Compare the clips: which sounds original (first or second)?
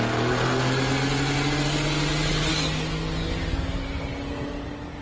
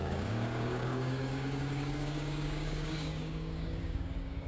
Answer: first